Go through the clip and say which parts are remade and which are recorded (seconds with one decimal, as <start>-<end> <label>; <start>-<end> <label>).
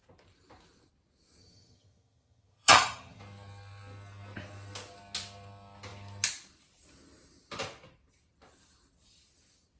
0.0-1.4 recorded; 1.4-3.2 remade; 3.2-9.8 recorded